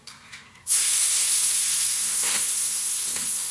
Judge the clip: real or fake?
fake